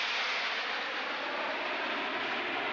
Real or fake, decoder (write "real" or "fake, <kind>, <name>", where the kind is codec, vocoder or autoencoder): real